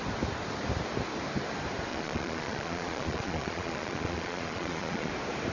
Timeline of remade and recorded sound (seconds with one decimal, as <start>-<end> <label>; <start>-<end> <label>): 0.0-1.9 recorded; 1.9-5.1 remade; 5.1-5.5 recorded